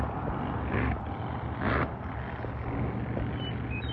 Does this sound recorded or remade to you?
recorded